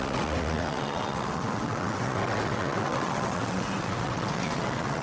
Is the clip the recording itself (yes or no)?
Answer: no